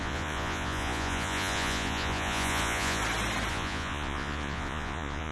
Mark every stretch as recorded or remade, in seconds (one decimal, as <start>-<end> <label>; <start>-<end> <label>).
0.0-3.0 remade; 3.0-3.5 recorded; 3.5-5.3 remade